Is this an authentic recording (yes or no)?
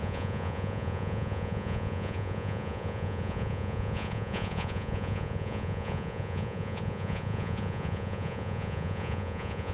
no